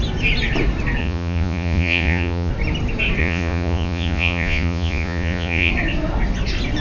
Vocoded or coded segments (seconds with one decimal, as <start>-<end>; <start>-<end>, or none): 1.0-2.5; 3.2-5.7